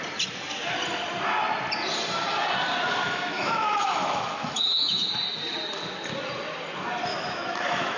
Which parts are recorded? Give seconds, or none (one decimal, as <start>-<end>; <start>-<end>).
0.0-3.0; 5.1-7.1